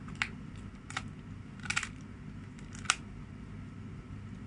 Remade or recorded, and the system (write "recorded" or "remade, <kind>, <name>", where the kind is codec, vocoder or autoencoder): recorded